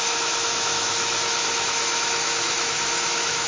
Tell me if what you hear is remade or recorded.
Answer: remade